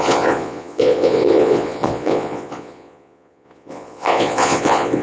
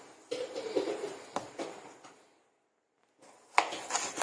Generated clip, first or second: first